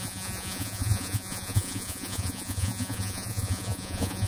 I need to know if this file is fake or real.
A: fake